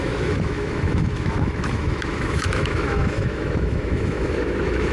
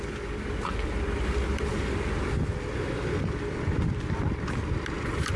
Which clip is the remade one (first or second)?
first